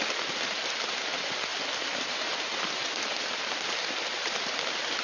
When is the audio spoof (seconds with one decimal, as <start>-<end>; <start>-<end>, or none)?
none